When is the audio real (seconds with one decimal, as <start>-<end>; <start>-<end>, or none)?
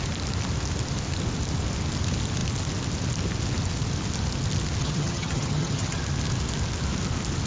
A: 0.0-4.8; 6.0-7.5